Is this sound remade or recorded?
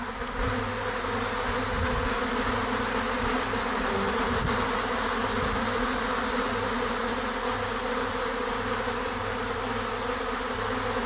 recorded